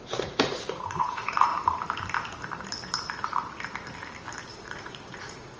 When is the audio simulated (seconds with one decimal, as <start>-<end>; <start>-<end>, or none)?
0.0-1.5; 4.5-5.6